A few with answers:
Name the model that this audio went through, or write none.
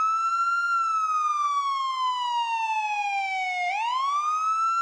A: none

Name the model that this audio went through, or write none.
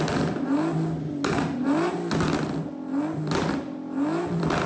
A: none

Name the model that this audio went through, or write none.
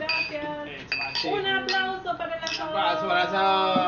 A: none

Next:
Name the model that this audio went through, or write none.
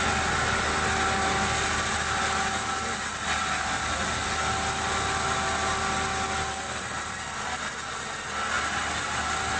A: none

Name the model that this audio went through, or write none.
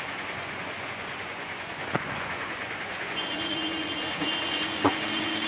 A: vocoder, Vocos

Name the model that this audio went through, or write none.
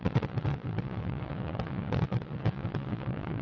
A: vocoder, WaveNeXt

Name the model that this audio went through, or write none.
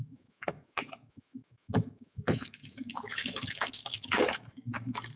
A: autoencoder, DAC-VAE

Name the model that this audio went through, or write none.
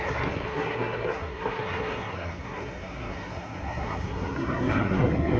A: codec, SNAC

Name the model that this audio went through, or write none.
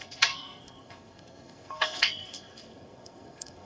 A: codec, SNAC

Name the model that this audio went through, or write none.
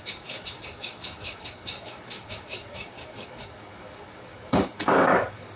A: codec, DAC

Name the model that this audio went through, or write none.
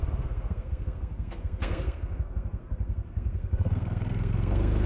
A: codec, SNAC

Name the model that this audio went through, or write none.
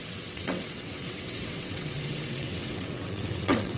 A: vocoder, WaveNeXt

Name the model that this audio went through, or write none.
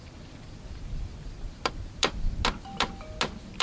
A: none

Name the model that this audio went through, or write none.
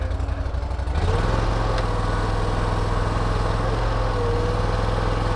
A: none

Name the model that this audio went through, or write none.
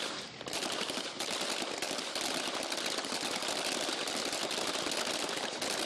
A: none